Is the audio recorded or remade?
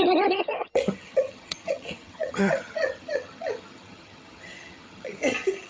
remade